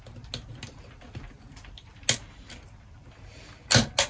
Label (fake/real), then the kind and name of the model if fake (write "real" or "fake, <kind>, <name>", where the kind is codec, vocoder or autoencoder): real